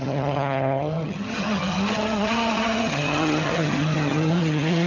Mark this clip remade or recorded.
remade